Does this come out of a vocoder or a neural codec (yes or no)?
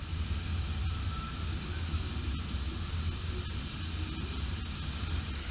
no